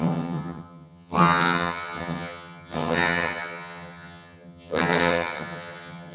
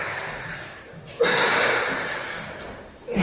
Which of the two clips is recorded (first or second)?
second